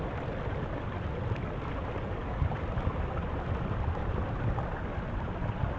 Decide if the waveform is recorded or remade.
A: recorded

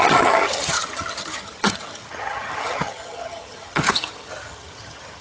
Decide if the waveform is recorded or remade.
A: remade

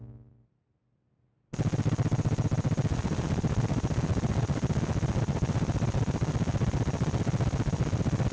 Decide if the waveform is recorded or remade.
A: recorded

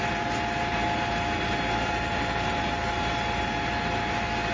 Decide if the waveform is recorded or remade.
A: recorded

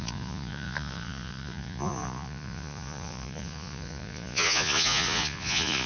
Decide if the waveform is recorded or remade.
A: remade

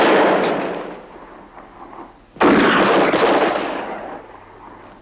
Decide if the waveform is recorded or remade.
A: recorded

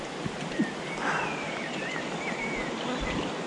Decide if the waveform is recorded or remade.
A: recorded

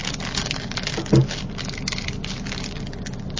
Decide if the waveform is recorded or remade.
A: recorded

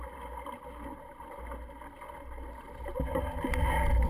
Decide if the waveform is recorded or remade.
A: recorded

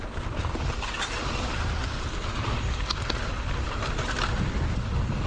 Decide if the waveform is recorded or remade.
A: remade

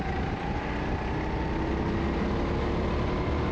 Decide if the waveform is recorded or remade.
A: recorded